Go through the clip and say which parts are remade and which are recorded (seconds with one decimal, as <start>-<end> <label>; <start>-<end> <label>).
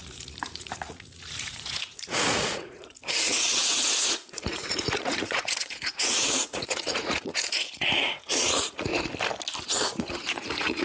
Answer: 0.0-8.9 remade; 8.9-9.7 recorded; 9.7-10.8 remade